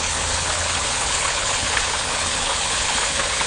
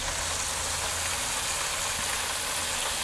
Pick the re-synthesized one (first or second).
first